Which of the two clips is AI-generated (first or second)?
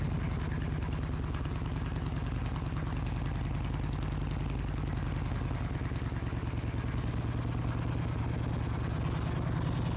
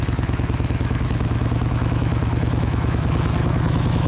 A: second